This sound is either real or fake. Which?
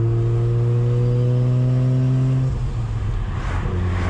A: real